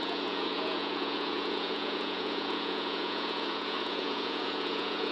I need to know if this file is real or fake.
fake